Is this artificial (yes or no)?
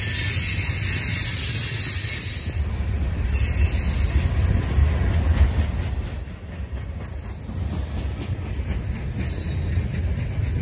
no